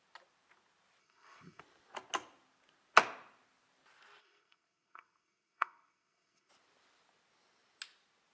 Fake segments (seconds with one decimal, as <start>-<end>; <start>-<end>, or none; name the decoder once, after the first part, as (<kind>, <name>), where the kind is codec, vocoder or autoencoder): 1.0-1.6 (codec, SNAC); 4.2-6.5